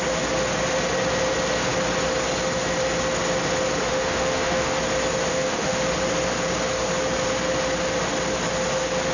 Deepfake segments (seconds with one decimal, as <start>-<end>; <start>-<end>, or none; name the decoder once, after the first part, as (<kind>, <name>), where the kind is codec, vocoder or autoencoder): 3.9-4.8 (autoencoder, DAC-VAE); 5.3-5.8